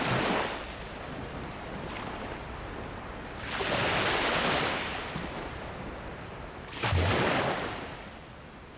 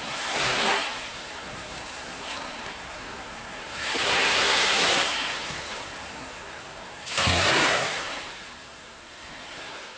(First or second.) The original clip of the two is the first